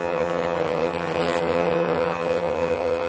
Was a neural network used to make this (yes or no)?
yes